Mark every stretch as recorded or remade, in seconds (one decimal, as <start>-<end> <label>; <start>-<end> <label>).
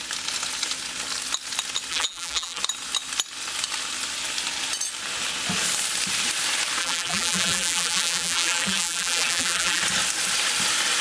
0.0-1.9 recorded; 1.9-2.6 remade; 2.6-6.8 recorded; 6.8-9.8 remade; 9.8-11.0 recorded